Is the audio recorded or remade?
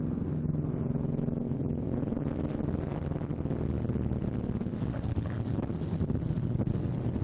recorded